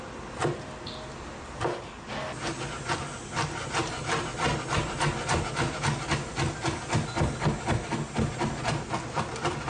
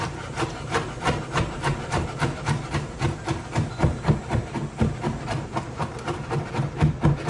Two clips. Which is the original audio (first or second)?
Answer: first